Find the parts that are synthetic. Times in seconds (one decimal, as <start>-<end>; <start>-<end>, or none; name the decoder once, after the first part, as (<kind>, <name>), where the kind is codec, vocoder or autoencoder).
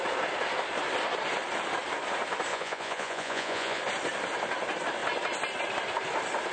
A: 2.5-3.8 (vocoder, Vocos)